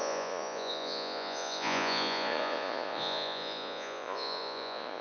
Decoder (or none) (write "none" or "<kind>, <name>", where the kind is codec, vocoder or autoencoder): vocoder, Vocos